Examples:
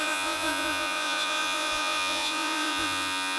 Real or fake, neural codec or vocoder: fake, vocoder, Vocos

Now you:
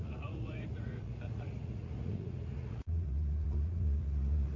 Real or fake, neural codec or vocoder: fake, vocoder, Vocos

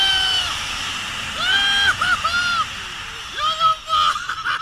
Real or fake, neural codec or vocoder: real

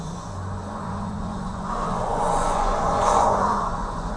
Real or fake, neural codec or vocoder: fake, vocoder, Vocos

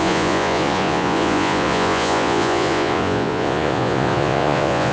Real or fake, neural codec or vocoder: fake, vocoder, Vocos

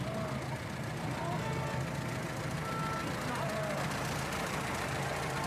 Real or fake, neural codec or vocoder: real